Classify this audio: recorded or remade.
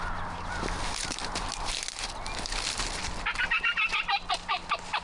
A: recorded